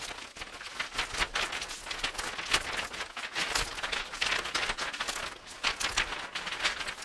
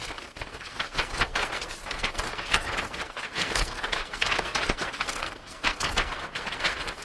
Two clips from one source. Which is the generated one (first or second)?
second